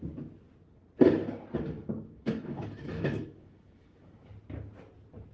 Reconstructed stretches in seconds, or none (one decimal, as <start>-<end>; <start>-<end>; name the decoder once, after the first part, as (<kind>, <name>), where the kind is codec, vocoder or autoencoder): 1.8-4.3 (autoencoder, DAC-VAE)